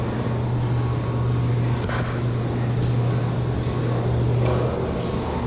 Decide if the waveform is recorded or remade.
recorded